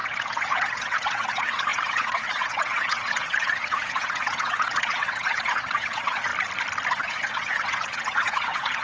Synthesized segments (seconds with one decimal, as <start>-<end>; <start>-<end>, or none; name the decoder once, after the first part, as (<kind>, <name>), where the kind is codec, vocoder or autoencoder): 0.0-6.3 (vocoder, WaveNeXt); 6.9-8.8